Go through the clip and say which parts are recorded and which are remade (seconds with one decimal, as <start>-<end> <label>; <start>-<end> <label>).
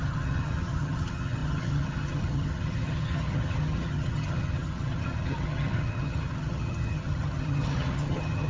0.0-8.5 remade